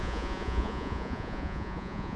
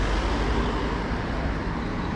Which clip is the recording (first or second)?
second